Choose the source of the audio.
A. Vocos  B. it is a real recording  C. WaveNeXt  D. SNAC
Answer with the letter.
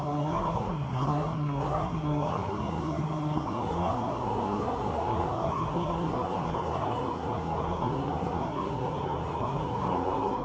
D